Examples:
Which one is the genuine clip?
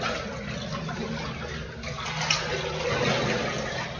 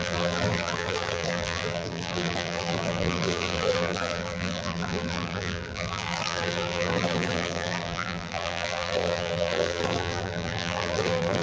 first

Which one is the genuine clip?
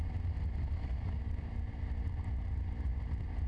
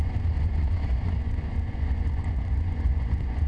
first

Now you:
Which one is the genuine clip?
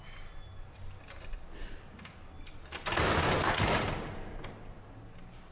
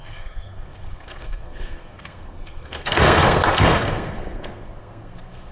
first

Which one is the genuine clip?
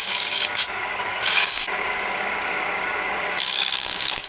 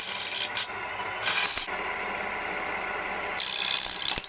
second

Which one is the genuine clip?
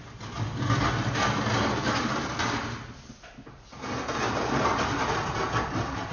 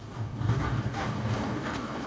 first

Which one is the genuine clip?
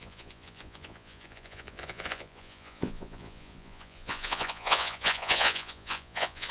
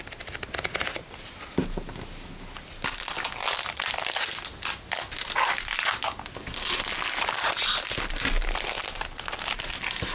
second